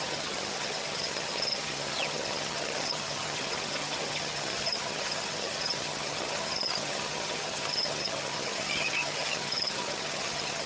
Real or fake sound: fake